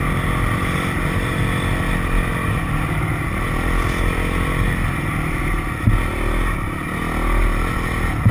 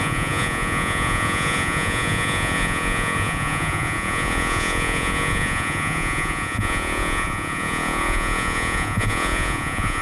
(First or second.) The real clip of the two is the first